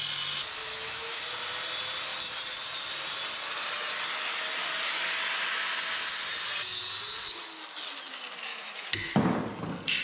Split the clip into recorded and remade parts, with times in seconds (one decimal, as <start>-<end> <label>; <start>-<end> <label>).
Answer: 0.0-0.6 recorded; 0.6-1.2 remade; 1.2-8.5 recorded; 8.5-9.1 remade; 9.1-10.0 recorded